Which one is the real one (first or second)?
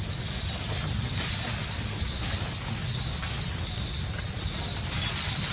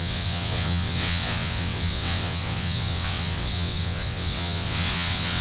first